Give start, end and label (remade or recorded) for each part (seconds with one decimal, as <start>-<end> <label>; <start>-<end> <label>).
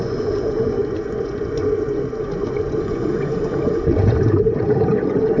0.0-5.4 remade